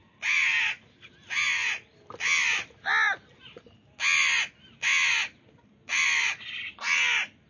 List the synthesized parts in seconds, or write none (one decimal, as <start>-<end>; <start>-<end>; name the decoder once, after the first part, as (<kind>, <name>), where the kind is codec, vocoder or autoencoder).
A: none